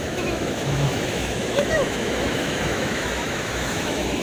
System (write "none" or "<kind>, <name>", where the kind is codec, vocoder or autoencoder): autoencoder, DAC-VAE